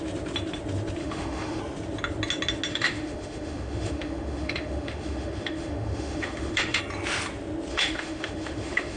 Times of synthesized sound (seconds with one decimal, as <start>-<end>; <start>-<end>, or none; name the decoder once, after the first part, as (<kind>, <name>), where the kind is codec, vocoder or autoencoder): 1.0-1.6 (autoencoder, DAC-VAE); 2.7-6.8; 7.7-9.0